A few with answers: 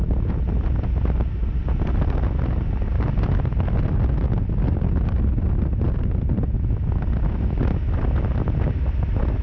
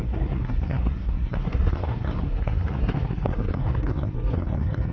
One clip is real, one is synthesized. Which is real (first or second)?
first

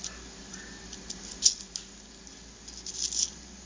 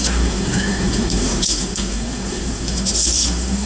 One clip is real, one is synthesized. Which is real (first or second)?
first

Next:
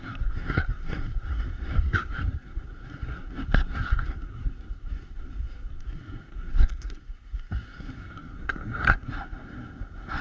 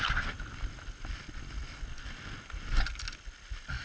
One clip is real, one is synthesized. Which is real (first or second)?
second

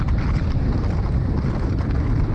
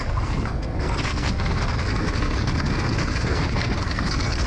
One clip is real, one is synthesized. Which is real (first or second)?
first